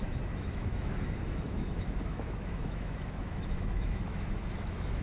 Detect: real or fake fake